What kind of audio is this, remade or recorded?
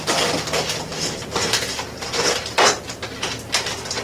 recorded